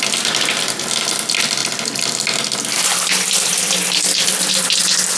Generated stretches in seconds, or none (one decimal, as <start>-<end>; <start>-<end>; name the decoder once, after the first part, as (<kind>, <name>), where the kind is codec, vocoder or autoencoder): none